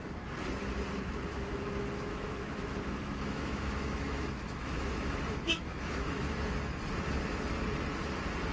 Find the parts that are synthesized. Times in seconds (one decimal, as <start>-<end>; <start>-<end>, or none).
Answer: 1.3-6.4